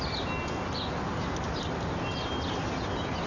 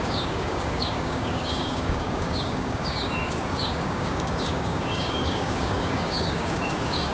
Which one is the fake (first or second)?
second